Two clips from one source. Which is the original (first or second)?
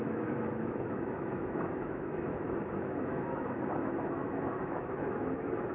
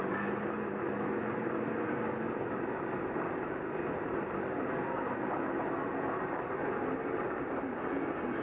second